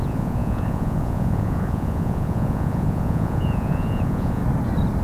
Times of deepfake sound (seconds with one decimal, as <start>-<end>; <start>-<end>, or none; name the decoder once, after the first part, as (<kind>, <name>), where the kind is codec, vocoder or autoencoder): 0.0-4.4 (vocoder, Vocos)